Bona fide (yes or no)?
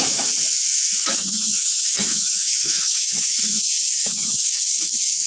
no